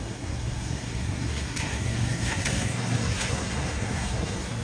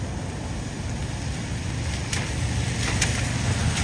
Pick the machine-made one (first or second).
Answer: first